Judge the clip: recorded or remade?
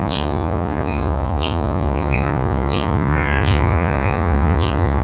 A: remade